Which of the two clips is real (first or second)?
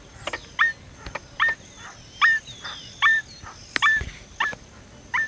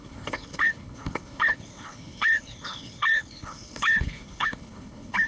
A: first